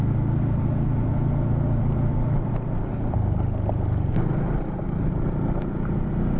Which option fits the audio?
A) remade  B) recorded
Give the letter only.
B